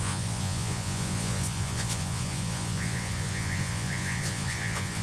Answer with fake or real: fake